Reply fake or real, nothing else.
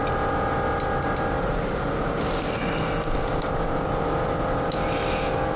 real